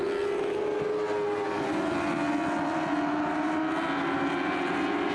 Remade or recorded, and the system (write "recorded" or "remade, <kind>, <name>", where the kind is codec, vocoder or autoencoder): recorded